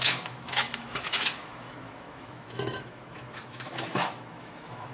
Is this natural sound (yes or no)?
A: no